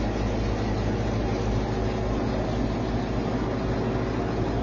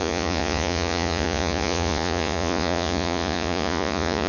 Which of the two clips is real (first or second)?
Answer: first